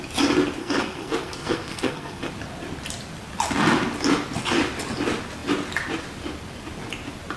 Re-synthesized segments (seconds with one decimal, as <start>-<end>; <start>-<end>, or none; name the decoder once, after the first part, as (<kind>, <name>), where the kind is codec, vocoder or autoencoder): 0.6-2.3 (codec, SNAC)